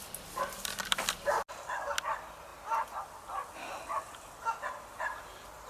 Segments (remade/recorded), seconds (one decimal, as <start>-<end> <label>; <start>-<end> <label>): 0.0-5.7 recorded

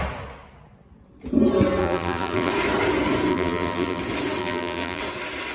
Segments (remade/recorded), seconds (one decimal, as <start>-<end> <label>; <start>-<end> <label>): 0.0-1.8 recorded; 1.8-2.5 remade; 2.5-3.3 recorded; 3.3-4.0 remade; 4.0-4.4 recorded; 4.4-5.0 remade; 5.0-5.5 recorded